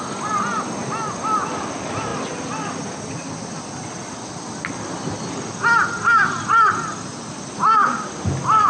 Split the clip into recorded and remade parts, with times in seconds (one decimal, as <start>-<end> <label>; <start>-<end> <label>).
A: 0.0-8.7 recorded